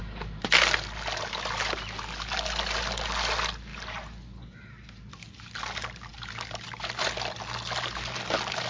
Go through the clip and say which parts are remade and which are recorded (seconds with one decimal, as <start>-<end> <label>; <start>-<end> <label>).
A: 0.0-8.7 recorded